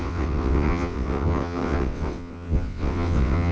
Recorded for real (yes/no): no